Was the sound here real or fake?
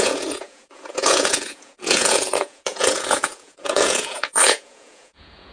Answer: fake